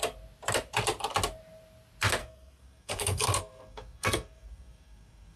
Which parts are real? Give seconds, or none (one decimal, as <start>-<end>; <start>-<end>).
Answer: 0.0-2.2